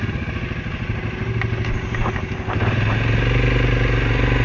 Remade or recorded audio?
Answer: recorded